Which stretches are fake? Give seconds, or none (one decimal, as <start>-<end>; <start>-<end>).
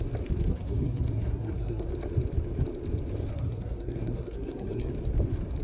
0.5-1.9; 3.3-4.9